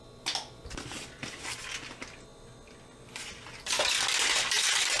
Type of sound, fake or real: real